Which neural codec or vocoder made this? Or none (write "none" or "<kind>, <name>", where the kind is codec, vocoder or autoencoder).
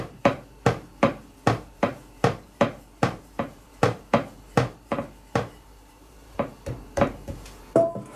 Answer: vocoder, BigVGAN v2